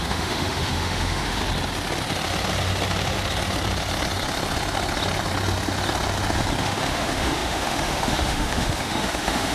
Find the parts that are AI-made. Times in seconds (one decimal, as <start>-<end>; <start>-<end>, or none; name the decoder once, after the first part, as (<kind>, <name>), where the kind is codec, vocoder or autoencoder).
0.0-1.4 (autoencoder, DAC-VAE); 6.6-9.5